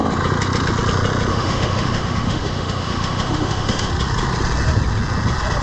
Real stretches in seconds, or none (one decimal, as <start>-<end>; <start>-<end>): 0.0-1.3; 3.9-5.6